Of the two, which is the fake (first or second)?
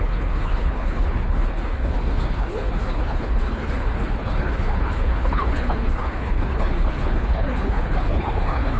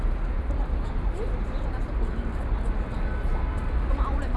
first